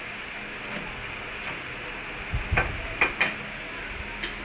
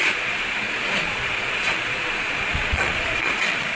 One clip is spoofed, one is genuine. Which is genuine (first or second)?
first